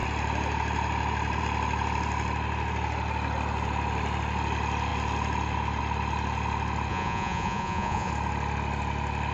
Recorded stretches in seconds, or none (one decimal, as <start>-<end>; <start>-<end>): 0.0-6.9; 8.1-9.3